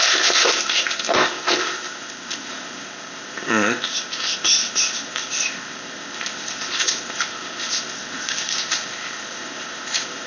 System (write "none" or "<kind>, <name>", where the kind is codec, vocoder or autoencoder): codec, ZipCodec